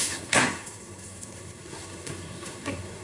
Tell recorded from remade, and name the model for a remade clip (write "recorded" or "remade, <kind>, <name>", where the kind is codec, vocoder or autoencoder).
remade, codec, SNAC